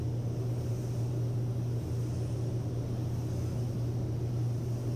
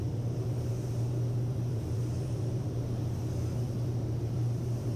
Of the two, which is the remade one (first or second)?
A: second